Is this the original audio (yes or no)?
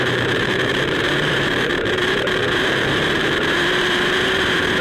no